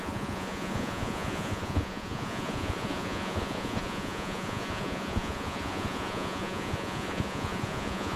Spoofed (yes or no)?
yes